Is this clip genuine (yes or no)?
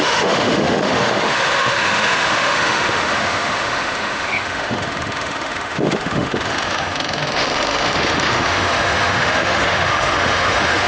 no